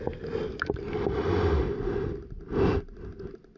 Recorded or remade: recorded